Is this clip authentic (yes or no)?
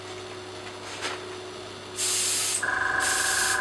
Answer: yes